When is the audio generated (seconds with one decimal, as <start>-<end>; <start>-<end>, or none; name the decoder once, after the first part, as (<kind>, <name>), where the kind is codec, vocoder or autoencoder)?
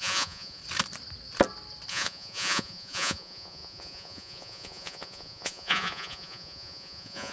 0.0-0.6 (vocoder, Vocos); 1.9-7.3